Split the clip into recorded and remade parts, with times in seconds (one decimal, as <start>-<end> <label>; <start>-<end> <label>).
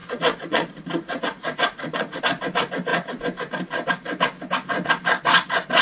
0.0-2.2 remade; 2.2-5.8 recorded